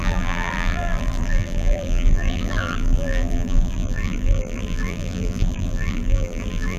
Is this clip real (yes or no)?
no